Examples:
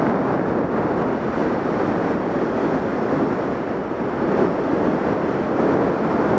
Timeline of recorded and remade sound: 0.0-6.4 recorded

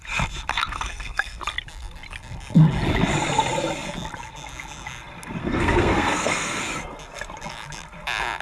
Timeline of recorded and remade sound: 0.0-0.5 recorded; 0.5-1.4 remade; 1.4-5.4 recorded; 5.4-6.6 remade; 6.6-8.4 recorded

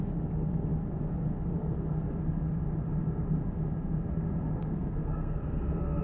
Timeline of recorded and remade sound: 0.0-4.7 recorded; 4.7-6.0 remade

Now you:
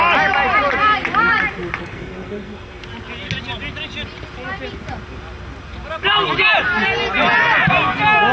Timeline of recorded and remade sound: 0.0-1.8 recorded; 1.8-2.8 remade; 2.8-8.3 recorded

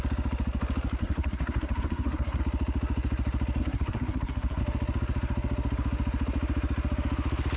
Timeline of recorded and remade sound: 0.0-1.0 recorded; 1.0-2.4 remade; 2.4-3.6 recorded; 3.6-4.6 remade; 4.6-7.6 recorded

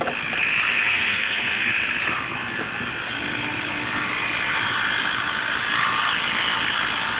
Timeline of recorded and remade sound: 0.0-0.7 recorded; 0.7-1.7 remade; 1.7-7.2 recorded